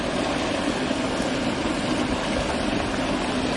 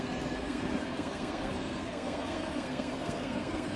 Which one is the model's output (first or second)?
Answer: second